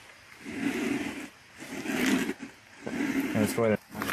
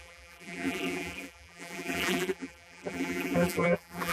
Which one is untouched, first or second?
first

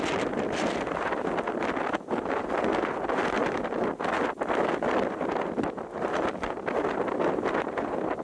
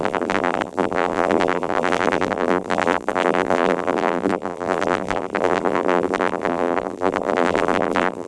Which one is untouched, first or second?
first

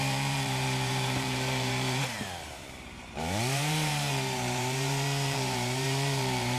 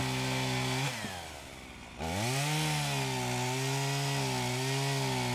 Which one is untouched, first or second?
second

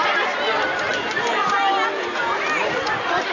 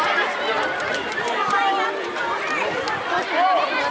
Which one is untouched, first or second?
first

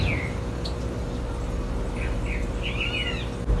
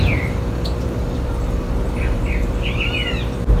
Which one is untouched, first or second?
first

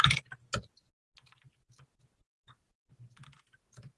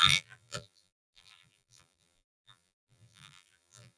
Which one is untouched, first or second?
first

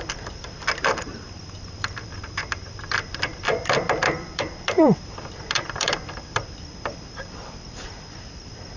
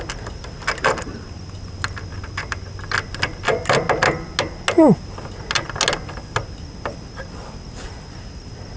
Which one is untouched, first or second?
second